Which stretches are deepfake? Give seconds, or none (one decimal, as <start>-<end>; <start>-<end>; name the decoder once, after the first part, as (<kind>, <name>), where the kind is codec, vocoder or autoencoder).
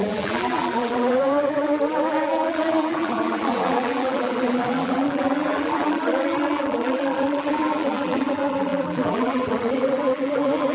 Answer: 0.0-10.7 (vocoder, BigVGAN v2)